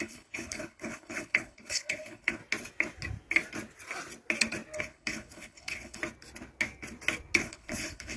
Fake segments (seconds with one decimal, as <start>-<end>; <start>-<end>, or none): 0.0-2.4; 4.8-6.0; 7.4-8.2